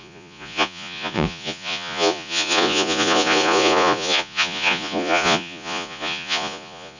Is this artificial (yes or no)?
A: yes